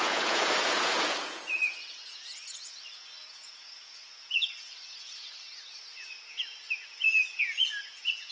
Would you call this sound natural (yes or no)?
no